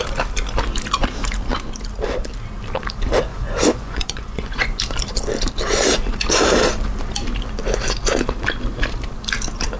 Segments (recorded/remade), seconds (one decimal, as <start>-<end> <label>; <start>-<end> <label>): 0.0-3.3 recorded; 3.3-4.8 remade; 4.8-9.8 recorded